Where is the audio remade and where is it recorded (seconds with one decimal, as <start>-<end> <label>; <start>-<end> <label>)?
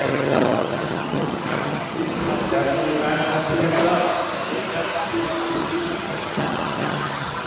0.0-2.2 remade; 2.2-5.6 recorded; 5.6-7.5 remade